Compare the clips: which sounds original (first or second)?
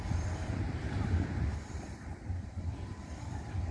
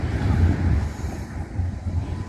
second